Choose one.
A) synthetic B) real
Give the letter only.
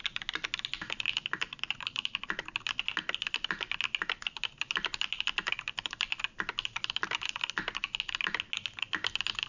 B